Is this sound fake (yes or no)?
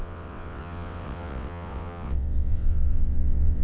yes